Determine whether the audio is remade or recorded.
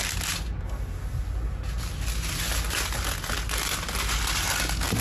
recorded